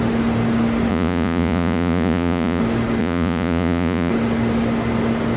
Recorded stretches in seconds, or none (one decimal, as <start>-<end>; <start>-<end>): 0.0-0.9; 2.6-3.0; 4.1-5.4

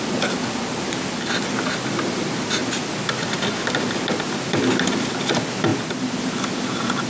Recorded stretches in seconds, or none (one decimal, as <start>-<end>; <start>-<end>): 0.0-7.1

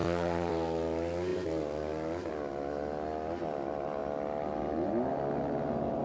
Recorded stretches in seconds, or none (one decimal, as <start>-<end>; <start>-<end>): 0.5-6.0

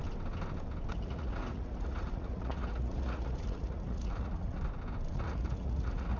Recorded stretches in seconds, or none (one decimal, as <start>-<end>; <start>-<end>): 0.0-0.9; 4.6-5.1